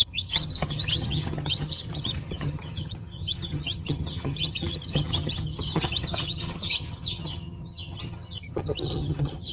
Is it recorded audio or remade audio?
remade